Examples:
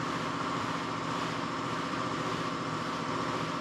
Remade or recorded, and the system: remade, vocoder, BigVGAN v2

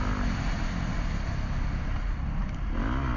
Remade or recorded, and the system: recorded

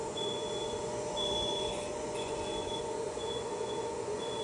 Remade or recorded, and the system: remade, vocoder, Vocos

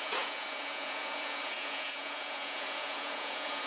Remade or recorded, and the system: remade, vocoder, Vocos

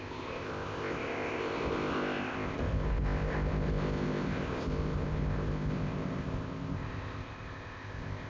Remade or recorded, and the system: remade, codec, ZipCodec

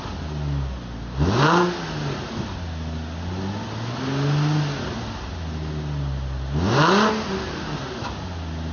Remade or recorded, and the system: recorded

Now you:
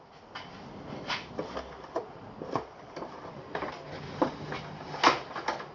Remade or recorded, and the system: recorded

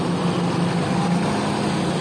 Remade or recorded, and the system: recorded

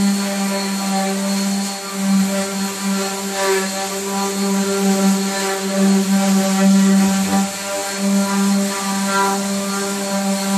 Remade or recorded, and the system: recorded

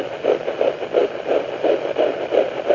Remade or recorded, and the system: recorded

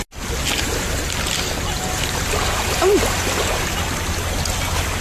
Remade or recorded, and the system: recorded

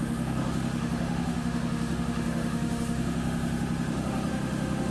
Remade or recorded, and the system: remade, autoencoder, DAC-VAE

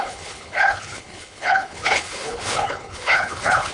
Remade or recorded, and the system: remade, codec, HILCodec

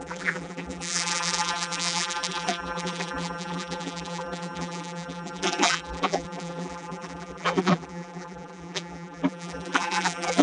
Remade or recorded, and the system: remade, vocoder, BigVGAN v2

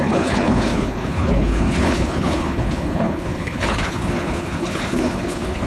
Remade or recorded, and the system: remade, codec, HILCodec